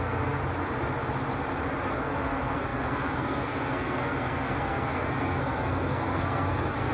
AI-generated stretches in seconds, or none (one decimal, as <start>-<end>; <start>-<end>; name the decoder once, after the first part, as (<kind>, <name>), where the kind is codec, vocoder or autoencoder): 0.0-0.4 (codec, SNAC); 1.9-6.9